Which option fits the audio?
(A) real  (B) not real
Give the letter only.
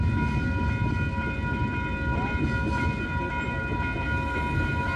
A